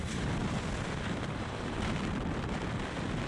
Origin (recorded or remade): remade